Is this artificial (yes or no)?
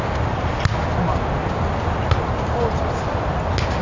no